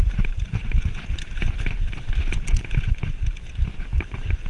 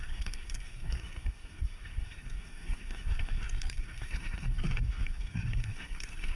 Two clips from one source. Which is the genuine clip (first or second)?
first